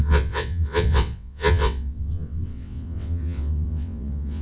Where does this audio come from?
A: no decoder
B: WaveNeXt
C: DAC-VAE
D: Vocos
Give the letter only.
B